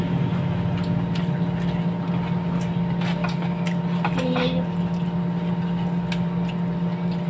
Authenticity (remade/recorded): recorded